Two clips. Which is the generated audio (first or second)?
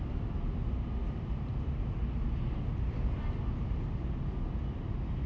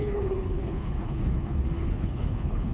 second